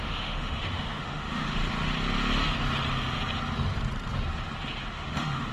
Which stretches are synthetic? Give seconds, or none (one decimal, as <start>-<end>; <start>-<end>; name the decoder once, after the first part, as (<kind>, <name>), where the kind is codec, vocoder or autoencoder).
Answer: 0.0-1.6 (autoencoder, DAC-VAE); 4.9-5.5